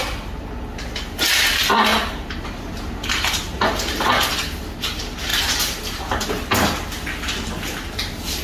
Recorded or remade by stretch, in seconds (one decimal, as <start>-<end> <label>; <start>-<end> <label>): 0.0-1.9 recorded; 1.9-4.1 remade; 4.1-5.3 recorded; 5.3-6.2 remade; 6.2-8.4 recorded